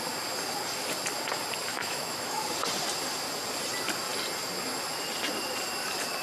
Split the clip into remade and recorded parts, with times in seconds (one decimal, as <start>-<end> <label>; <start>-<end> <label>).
0.0-1.7 recorded; 1.7-2.4 remade; 2.4-6.2 recorded